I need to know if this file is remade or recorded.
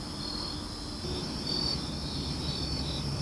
recorded